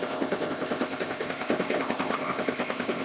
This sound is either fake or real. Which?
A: fake